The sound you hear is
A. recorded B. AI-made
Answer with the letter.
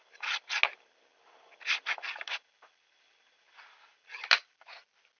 A